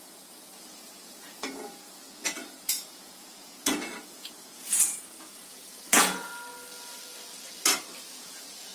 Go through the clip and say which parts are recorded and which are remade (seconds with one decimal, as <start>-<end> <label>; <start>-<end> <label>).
0.0-6.3 remade; 6.3-8.1 recorded; 8.1-8.7 remade